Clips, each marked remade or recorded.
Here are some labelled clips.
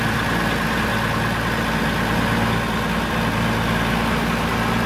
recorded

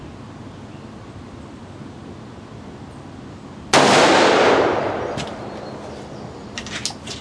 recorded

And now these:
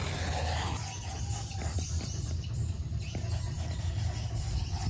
recorded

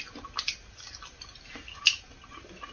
recorded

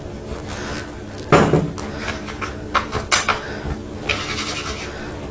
recorded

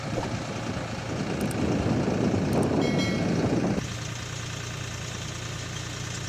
recorded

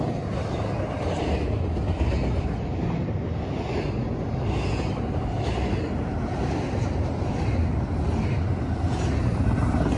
recorded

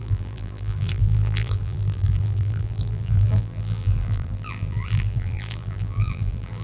remade